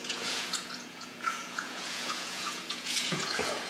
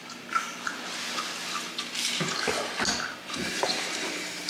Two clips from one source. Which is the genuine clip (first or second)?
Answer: second